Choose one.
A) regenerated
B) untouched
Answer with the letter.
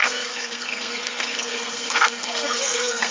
A